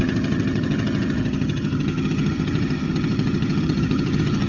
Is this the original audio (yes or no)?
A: no